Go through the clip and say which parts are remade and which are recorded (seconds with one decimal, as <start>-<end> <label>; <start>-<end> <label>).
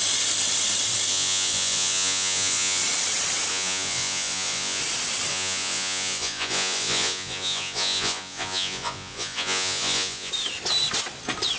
0.0-1.1 recorded; 1.1-2.8 remade; 2.8-3.5 recorded; 3.5-4.8 remade; 4.8-5.3 recorded; 5.3-10.3 remade; 10.3-11.6 recorded